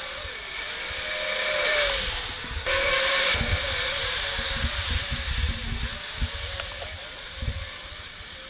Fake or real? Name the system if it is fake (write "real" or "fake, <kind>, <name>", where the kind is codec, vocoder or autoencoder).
real